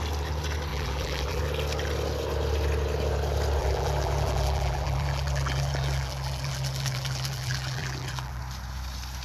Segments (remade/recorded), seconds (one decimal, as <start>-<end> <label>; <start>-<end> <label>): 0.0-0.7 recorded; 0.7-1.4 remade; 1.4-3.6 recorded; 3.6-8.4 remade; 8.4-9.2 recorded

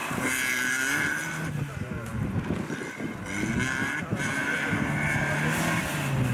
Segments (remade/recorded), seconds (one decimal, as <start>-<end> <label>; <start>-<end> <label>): 0.0-1.4 remade; 1.4-2.1 recorded; 2.1-2.8 remade; 2.8-6.3 recorded

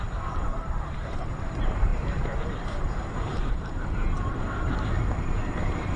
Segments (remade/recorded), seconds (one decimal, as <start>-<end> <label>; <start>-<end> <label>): 0.0-6.0 remade

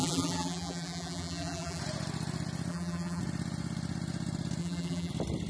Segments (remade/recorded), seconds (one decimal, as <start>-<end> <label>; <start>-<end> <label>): 0.0-1.8 remade; 1.8-2.7 recorded; 2.7-3.2 remade; 3.2-4.6 recorded; 4.6-5.1 remade; 5.1-5.5 recorded

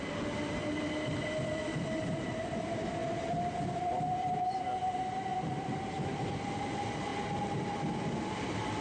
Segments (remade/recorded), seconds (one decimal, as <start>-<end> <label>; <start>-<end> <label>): 0.0-3.0 remade; 3.0-3.8 recorded; 3.8-7.1 remade; 7.1-8.3 recorded; 8.3-8.8 remade

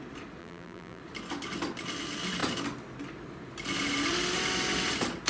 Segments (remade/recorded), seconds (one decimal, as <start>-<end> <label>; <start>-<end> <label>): 0.0-0.4 recorded; 0.4-1.0 remade; 1.0-5.3 recorded

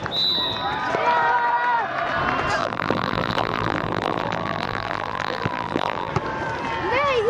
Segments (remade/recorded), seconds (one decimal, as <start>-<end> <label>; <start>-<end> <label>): 0.0-2.6 recorded; 2.6-6.1 remade; 6.1-7.3 recorded

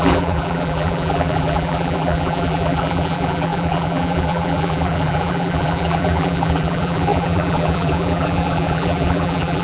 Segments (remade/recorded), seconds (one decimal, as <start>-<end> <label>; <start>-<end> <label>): 0.0-9.6 remade